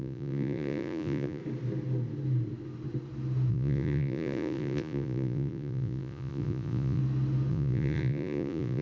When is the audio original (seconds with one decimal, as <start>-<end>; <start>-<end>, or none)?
1.4-3.5; 7.0-7.5